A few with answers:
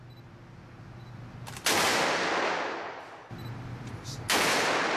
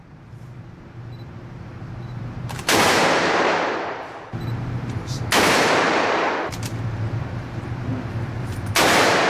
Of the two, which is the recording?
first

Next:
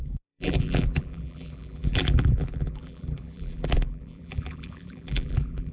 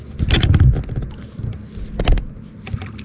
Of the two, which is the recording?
second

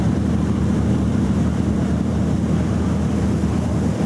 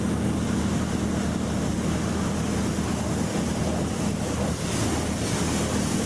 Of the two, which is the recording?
second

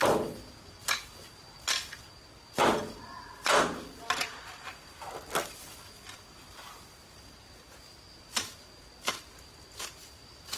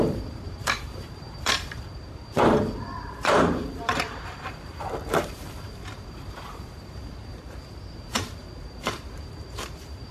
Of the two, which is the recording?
first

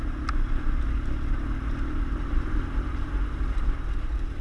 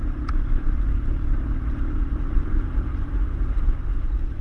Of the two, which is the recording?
first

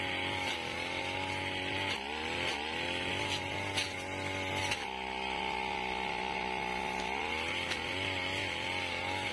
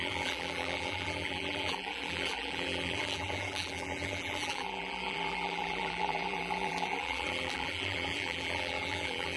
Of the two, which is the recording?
first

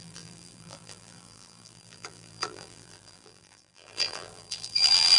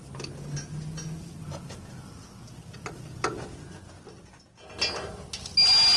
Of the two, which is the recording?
second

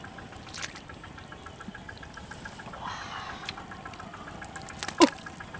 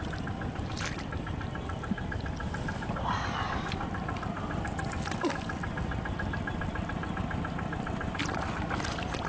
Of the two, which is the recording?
first